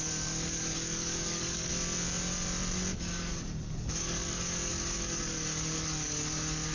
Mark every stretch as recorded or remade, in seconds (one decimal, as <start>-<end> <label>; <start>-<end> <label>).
0.0-1.7 remade; 1.7-3.0 recorded; 3.0-6.7 remade